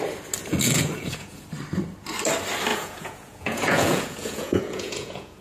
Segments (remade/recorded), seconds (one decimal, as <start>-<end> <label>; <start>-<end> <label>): 0.0-0.4 recorded; 0.4-1.4 remade; 1.4-2.7 recorded; 2.7-5.4 remade